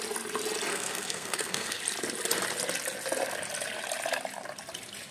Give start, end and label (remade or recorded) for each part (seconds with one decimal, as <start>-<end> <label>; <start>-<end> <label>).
0.0-0.7 recorded; 0.7-1.8 remade; 1.8-5.1 recorded

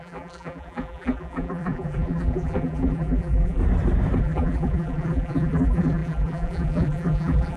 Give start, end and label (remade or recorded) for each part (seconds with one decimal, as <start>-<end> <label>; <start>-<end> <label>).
0.0-3.6 remade; 3.6-4.2 recorded; 4.2-7.6 remade